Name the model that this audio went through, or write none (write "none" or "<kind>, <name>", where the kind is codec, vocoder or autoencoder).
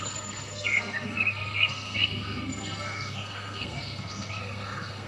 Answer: codec, SNAC